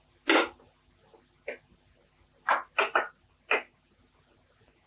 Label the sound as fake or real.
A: real